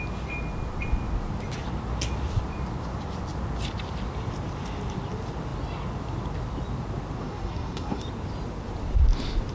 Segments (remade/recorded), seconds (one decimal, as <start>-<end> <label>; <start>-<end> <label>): 0.0-7.2 recorded; 7.2-8.0 remade; 8.0-9.5 recorded